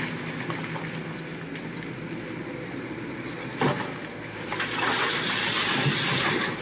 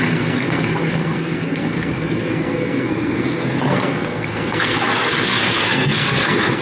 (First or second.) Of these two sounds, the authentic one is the first